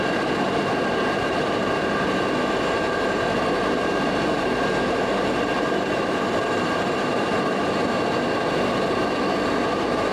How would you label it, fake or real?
fake